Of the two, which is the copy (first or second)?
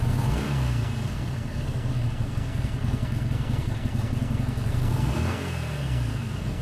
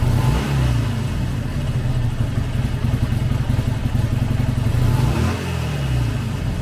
first